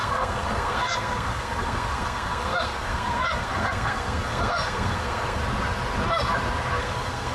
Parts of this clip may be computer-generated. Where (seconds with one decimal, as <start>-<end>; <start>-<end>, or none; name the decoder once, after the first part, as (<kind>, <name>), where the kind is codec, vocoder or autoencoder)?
0.0-5.4 (codec, SNAC); 6.8-7.3